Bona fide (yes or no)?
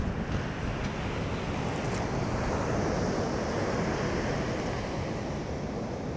yes